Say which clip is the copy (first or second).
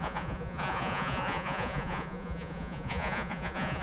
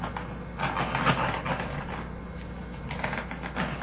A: first